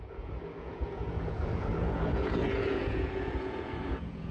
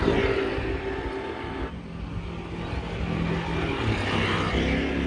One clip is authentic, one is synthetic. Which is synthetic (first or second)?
first